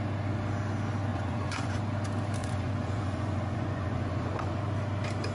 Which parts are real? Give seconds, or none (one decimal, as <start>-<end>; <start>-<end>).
0.0-1.1; 1.8-2.4; 4.6-5.3